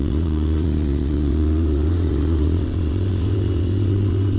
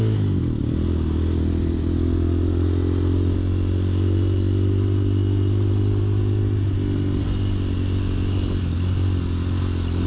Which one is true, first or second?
second